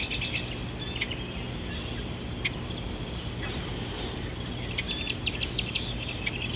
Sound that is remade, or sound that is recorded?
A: recorded